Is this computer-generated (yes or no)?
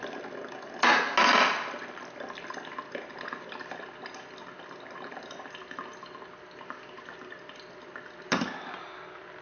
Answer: no